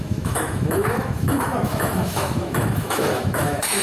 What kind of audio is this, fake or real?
fake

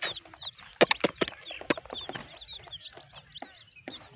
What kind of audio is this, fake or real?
real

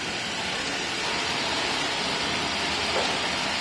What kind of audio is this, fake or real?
real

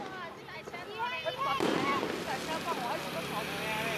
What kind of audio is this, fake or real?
real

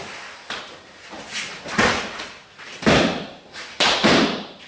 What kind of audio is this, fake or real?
fake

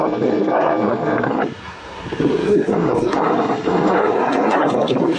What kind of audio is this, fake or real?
fake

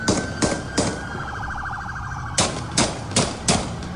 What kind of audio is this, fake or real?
real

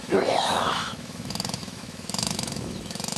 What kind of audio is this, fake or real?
fake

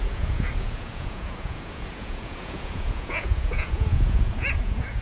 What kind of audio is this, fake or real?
fake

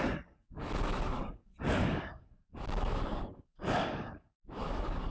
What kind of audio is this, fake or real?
fake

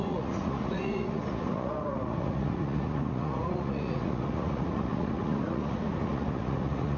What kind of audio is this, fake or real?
fake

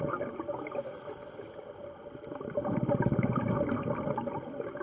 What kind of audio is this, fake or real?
real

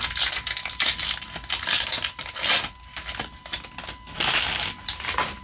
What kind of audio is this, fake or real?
real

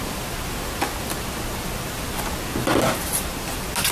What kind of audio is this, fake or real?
real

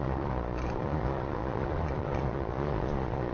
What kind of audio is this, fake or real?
fake